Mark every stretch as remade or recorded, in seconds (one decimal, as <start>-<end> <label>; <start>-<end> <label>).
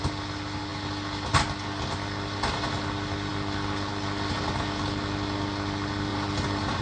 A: 0.0-6.1 recorded; 6.1-6.8 remade